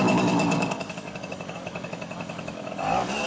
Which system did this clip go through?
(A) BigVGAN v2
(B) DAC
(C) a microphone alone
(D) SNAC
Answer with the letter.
B